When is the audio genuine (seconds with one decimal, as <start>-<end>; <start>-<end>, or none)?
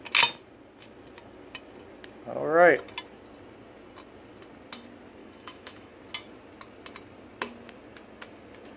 0.0-5.2; 5.9-8.8